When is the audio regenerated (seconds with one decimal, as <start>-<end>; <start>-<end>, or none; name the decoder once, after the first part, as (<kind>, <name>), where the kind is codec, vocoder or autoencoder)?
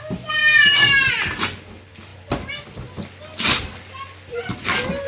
0.4-1.1 (codec, DAC)